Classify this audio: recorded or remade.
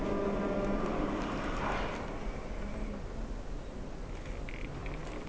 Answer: recorded